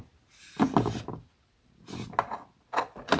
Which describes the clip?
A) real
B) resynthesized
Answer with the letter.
A